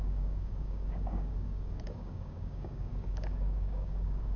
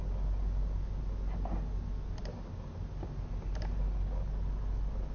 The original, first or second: second